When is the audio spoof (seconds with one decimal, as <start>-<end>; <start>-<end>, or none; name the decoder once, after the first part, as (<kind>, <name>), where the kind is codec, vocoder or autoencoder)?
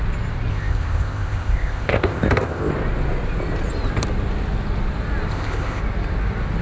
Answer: 0.5-2.7 (codec, ZipCodec); 5.3-5.8